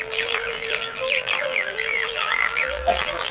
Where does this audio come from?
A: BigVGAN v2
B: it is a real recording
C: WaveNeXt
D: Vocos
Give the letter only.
A